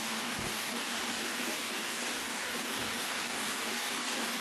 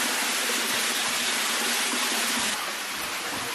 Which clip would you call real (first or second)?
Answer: second